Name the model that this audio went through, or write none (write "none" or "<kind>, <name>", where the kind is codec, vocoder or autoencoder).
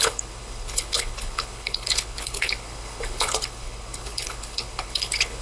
codec, HILCodec